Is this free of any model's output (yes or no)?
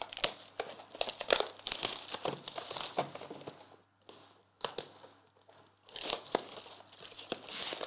yes